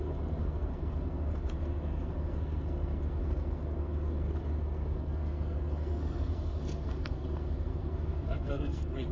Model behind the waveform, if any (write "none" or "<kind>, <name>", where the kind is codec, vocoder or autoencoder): codec, SNAC